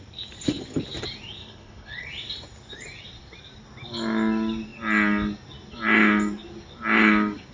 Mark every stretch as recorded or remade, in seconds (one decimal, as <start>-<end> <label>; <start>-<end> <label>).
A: 0.0-1.4 recorded; 1.4-2.1 remade; 2.1-7.5 recorded